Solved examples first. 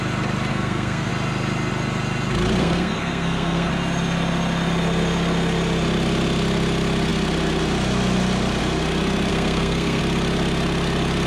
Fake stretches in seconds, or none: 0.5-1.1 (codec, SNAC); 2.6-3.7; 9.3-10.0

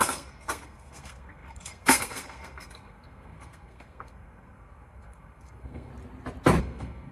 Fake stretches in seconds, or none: 0.0-5.9 (codec, SNAC); 6.6-7.1

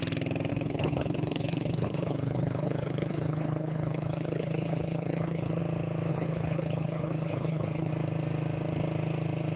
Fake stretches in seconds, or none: 0.5-5.6 (codec, HILCodec); 6.1-7.9

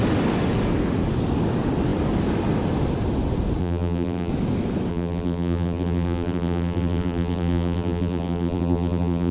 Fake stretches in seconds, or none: 3.6-4.3 (vocoder, BigVGAN v2); 4.9-9.3

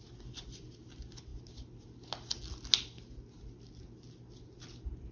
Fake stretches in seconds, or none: none